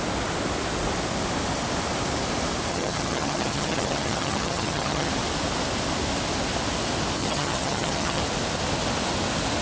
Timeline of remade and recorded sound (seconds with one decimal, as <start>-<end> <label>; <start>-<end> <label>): 0.0-2.7 recorded; 2.7-5.1 remade; 5.1-7.2 recorded; 7.2-8.2 remade; 8.2-9.6 recorded